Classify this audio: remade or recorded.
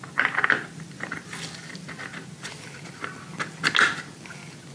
recorded